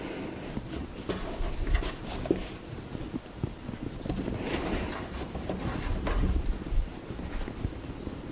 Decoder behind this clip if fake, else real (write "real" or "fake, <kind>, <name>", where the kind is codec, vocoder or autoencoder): real